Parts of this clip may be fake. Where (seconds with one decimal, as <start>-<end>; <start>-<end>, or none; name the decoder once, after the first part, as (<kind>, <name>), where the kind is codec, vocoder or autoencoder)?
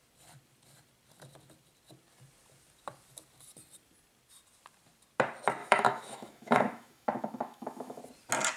5.6-8.0 (autoencoder, DAC-VAE)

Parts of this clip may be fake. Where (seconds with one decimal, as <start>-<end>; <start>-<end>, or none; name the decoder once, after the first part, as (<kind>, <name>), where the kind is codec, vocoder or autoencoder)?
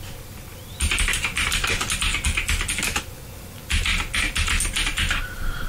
none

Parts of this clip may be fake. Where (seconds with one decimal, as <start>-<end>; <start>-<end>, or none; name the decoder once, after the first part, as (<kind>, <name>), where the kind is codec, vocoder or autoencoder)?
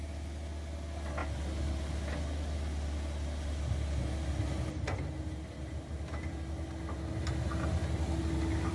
none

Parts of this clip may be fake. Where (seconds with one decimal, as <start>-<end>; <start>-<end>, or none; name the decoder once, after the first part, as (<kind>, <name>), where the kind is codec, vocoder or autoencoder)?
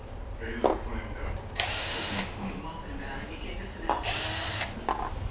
1.8-2.6 (autoencoder, DAC-VAE)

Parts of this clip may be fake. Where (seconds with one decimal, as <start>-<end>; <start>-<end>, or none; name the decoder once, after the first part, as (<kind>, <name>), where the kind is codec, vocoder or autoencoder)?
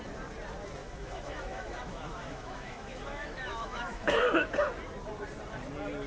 0.8-4.5 (autoencoder, DAC-VAE)